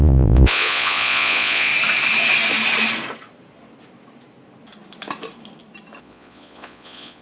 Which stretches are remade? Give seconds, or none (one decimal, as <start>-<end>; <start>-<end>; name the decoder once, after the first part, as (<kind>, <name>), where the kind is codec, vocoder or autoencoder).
0.0-1.7 (vocoder, Vocos); 6.0-7.2